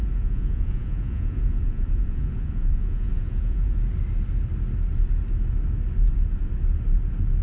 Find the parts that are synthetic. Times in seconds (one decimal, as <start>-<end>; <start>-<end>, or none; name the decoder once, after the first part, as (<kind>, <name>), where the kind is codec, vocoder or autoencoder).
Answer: 0.0-3.8 (vocoder, Vocos)